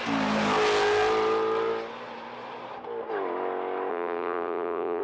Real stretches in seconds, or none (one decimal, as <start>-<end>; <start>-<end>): 0.0-3.9